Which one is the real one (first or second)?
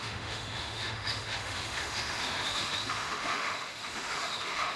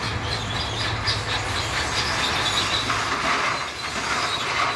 second